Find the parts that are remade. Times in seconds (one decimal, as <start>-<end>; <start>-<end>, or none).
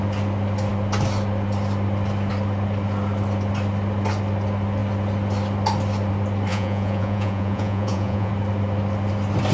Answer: 6.5-8.3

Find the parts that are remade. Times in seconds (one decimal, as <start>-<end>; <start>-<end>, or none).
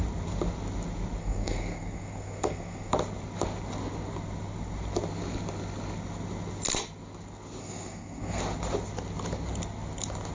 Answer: 1.2-2.9; 7.6-8.4